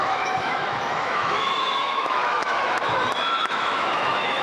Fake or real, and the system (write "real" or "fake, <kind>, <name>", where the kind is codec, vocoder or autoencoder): fake, autoencoder, DAC-VAE